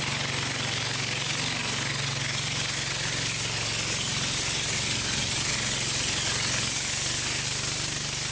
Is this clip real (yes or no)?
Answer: yes